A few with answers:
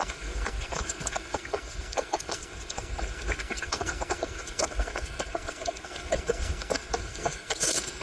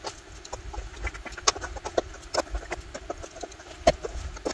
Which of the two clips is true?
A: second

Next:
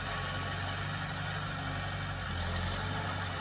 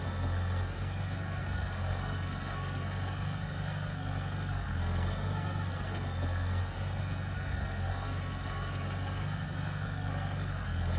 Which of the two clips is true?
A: first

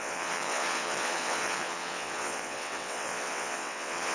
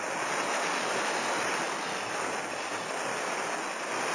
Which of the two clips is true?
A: second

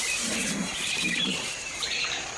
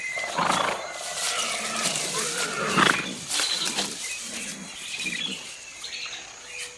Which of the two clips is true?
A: second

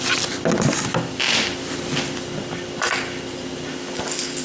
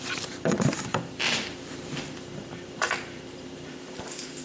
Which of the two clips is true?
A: first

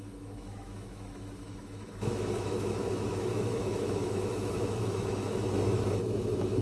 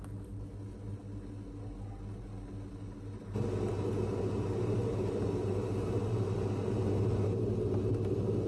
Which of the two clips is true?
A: second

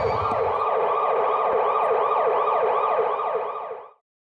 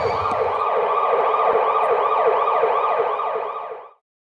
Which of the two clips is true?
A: first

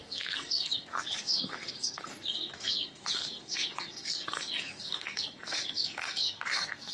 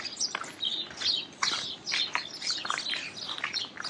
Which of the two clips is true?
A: second